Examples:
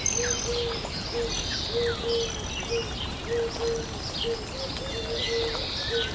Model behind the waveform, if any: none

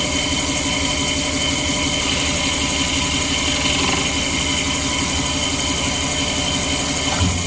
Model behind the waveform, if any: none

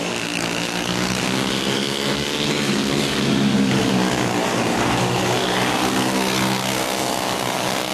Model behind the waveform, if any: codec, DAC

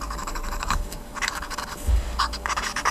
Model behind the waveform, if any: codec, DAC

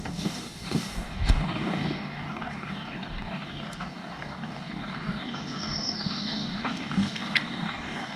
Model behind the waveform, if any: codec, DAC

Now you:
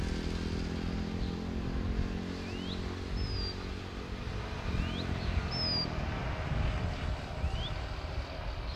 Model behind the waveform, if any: none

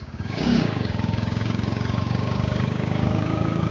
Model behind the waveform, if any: codec, DAC